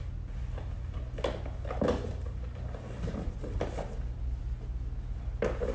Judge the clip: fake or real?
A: real